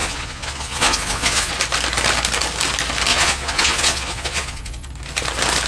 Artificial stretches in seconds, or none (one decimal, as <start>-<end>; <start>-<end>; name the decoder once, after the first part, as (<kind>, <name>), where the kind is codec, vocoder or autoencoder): 0.0-1.5 (vocoder, Vocos); 3.1-4.9